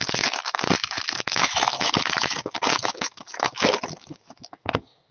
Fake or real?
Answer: fake